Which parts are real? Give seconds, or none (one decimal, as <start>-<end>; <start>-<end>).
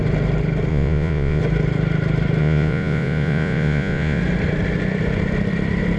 0.0-0.7; 1.4-2.4; 4.2-6.0